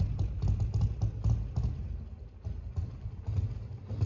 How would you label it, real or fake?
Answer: real